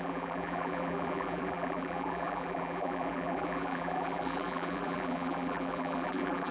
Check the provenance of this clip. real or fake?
fake